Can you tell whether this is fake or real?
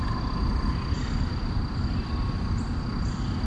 real